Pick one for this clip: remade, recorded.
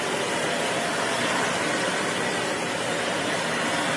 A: recorded